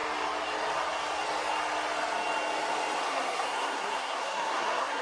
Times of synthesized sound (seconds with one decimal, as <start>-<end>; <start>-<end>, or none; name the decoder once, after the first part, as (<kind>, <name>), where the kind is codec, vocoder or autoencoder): 3.0-5.0 (codec, SNAC)